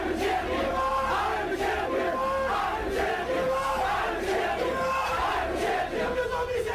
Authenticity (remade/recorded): recorded